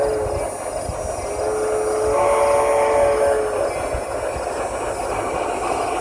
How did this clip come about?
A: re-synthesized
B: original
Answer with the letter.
B